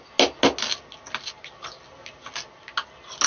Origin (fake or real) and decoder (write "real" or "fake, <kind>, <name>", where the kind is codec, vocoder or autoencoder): real